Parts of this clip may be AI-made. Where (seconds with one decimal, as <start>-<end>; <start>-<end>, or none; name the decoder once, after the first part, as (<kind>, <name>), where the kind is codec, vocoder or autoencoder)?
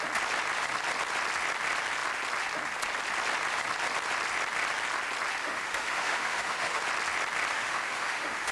5.4-6.8 (autoencoder, DAC-VAE); 7.5-8.5